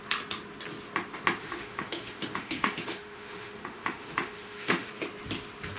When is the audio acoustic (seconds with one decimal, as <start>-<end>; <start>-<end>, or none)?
0.0-1.4; 4.9-5.8